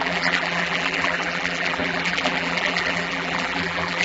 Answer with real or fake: fake